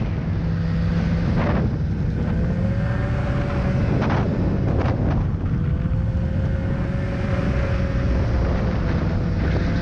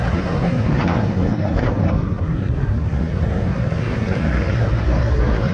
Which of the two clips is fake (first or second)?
second